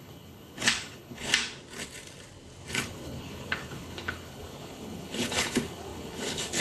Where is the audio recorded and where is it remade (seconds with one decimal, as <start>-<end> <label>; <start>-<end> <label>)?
0.0-1.3 remade; 1.3-2.7 recorded; 2.7-6.6 remade